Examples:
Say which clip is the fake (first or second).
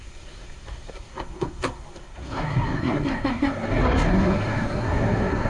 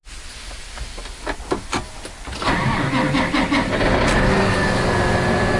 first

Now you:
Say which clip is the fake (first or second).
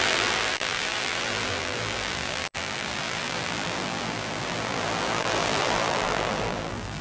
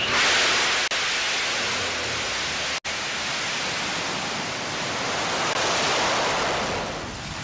first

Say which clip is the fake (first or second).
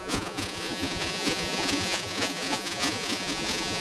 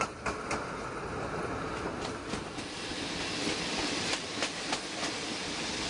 first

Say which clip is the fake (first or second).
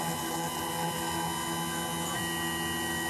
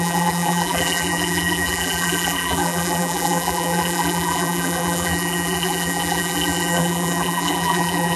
second